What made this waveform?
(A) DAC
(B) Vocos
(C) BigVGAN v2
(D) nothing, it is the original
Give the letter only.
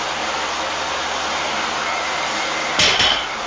D